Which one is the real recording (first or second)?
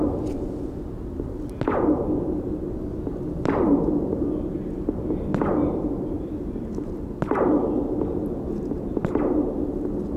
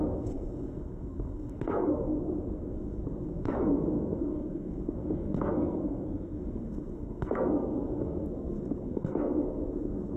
first